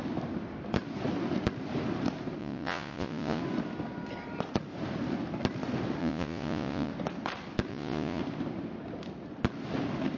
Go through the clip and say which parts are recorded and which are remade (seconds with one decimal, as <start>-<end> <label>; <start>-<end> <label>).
0.0-2.4 recorded; 2.4-3.4 remade; 3.4-6.0 recorded; 6.0-6.9 remade; 6.9-7.7 recorded; 7.7-8.2 remade; 8.2-10.2 recorded

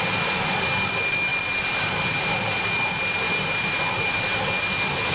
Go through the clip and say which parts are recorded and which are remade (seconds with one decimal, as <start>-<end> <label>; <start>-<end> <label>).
0.0-5.1 recorded

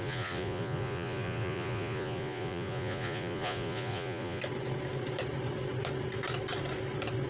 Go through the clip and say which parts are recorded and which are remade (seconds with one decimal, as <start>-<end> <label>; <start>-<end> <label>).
0.0-4.4 remade; 4.4-7.3 recorded

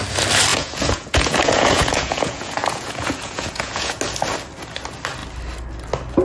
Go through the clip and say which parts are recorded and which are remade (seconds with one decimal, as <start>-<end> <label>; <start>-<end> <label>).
0.0-0.5 recorded; 0.5-4.0 remade; 4.0-6.2 recorded

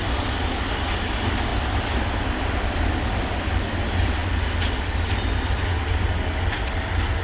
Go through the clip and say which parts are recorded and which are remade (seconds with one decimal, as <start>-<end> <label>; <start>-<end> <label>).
0.0-7.2 recorded

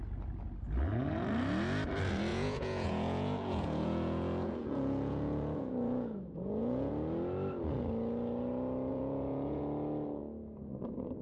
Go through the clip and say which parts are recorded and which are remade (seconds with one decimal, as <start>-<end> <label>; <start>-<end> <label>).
0.0-2.3 recorded; 2.3-6.9 remade; 6.9-8.9 recorded; 8.9-9.6 remade; 9.6-11.2 recorded

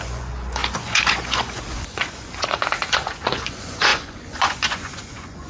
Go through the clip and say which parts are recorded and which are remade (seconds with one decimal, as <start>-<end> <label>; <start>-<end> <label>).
0.0-5.5 remade

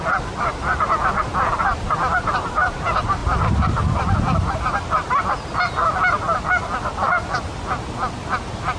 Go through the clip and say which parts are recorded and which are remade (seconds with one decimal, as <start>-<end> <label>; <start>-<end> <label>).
0.0-8.8 recorded